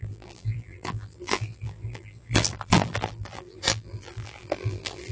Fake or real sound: fake